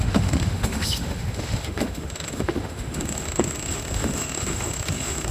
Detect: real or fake fake